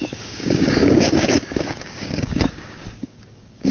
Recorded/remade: remade